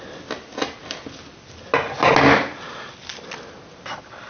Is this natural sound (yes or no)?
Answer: yes